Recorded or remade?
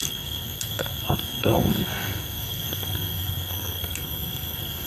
remade